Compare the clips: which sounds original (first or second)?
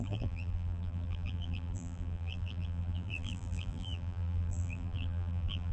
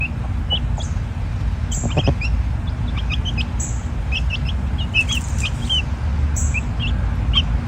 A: second